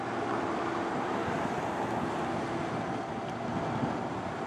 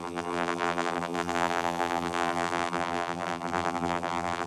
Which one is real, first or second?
first